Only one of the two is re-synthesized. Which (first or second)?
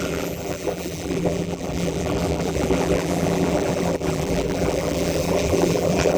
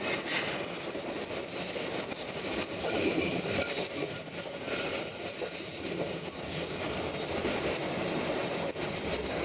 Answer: first